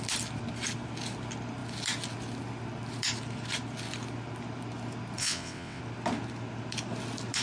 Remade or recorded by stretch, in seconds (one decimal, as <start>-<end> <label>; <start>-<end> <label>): 0.0-5.2 recorded; 5.2-5.8 remade; 5.8-7.4 recorded